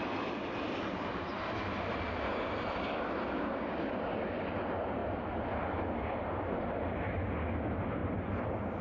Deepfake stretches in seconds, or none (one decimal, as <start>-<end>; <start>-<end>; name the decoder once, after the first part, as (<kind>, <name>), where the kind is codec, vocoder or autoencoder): none